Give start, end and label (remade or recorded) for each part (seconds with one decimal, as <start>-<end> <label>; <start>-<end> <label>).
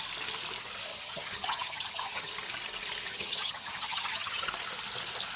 0.0-0.9 recorded; 0.9-2.3 remade; 2.3-3.1 recorded; 3.1-4.5 remade; 4.5-5.4 recorded